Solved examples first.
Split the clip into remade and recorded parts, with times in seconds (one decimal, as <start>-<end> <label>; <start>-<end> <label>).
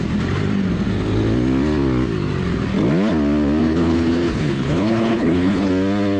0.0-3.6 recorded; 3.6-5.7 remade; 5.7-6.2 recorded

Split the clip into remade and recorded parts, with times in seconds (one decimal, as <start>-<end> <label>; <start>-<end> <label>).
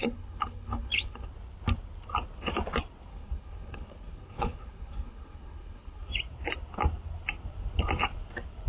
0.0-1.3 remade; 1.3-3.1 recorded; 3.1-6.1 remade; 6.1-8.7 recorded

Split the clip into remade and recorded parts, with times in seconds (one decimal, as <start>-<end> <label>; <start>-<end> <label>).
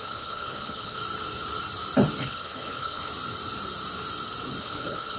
0.0-1.0 remade; 1.0-2.2 recorded; 2.2-3.1 remade; 3.1-4.6 recorded; 4.6-5.2 remade